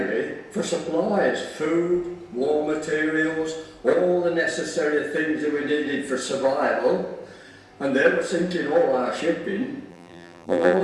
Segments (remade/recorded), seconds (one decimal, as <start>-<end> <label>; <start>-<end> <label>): 0.0-9.9 recorded; 9.9-10.8 remade